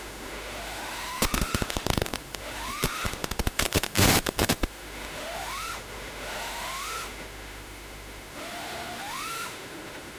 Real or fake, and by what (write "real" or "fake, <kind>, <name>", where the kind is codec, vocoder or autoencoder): fake, autoencoder, DAC-VAE